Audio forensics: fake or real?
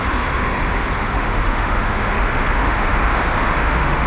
fake